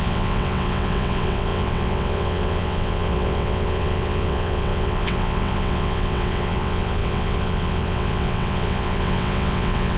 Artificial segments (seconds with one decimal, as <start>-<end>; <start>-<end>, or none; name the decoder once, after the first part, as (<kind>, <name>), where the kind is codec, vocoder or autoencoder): 0.0-10.0 (vocoder, WaveNeXt)